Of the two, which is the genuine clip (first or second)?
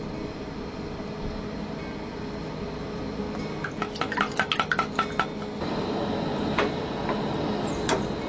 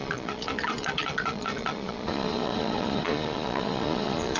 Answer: first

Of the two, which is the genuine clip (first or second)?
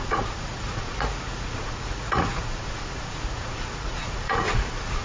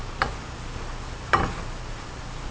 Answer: second